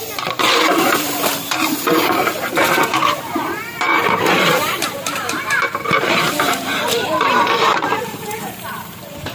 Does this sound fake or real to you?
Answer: fake